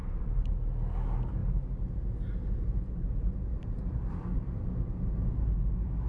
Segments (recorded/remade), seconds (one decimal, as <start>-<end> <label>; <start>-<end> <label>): 0.0-0.5 remade; 0.5-1.4 recorded; 1.4-4.1 remade; 4.1-6.1 recorded